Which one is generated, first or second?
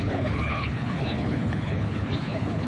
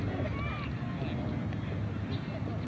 first